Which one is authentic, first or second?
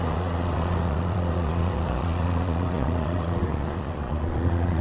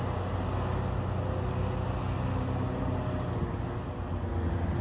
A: second